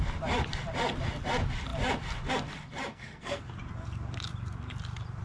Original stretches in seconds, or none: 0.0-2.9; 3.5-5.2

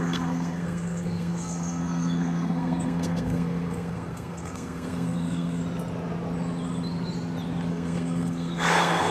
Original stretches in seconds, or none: 5.6-7.7

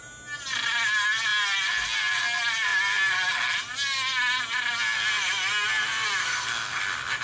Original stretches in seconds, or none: 0.0-6.2; 6.8-7.2

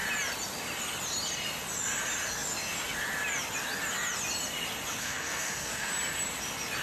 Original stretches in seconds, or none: 0.0-5.0; 5.9-6.8

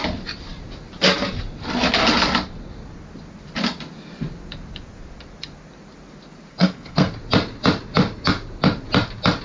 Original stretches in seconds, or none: 0.0-6.5; 7.1-9.4

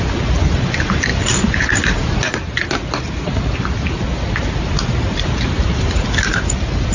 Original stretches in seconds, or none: 0.0-6.9